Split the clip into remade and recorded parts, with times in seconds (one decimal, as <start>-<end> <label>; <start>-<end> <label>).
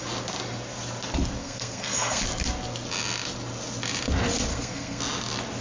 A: 0.0-1.4 recorded; 1.4-2.2 remade; 2.2-4.5 recorded; 4.5-5.0 remade; 5.0-5.6 recorded